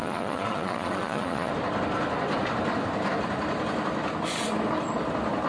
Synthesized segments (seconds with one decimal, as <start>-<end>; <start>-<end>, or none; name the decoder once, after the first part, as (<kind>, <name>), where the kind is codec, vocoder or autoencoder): 0.0-1.5 (vocoder, Vocos)